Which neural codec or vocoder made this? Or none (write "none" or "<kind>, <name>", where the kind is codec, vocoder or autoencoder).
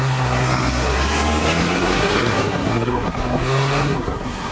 codec, SNAC